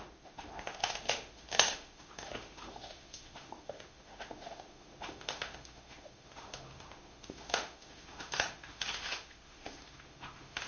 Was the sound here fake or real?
fake